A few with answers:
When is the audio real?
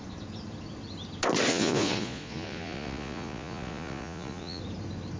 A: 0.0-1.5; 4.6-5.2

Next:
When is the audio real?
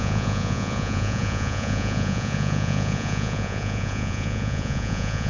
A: none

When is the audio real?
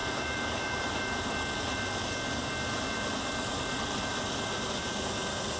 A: 1.0-4.1; 4.9-5.6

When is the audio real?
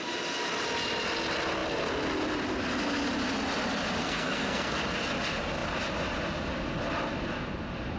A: 0.0-4.0; 4.8-8.0